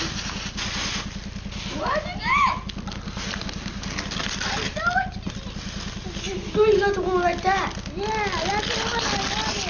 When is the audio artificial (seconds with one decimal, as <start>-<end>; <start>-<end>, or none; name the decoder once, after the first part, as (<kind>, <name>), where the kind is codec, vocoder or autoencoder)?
none